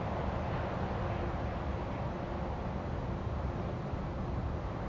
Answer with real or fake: real